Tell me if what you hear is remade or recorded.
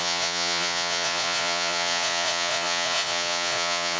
remade